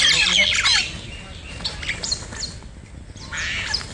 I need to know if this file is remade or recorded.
recorded